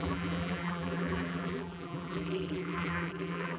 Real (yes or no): no